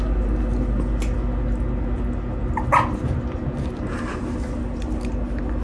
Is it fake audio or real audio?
real